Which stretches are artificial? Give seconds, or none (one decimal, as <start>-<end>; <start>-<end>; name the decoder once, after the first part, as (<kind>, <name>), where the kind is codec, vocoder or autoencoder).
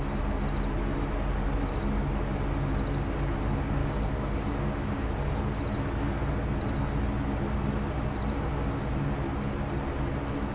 3.8-5.1 (codec, DAC)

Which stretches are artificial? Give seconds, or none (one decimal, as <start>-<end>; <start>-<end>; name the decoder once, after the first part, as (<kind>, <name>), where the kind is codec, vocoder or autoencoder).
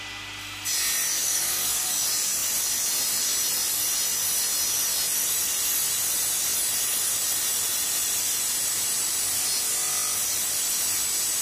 1.2-1.9 (codec, DAC)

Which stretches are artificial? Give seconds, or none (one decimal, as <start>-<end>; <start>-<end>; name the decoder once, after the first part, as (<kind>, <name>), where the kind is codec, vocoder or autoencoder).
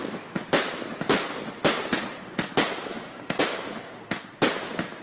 2.9-3.4 (codec, DAC)